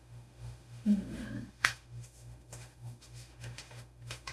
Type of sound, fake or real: fake